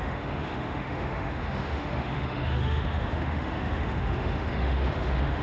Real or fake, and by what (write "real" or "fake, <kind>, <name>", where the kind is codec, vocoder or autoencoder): fake, autoencoder, DAC-VAE